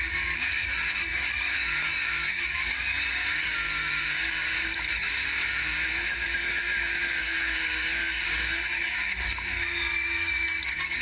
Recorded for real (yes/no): no